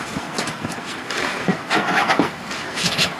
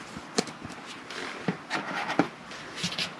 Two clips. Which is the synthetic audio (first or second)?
first